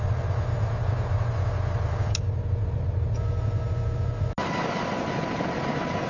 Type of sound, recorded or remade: recorded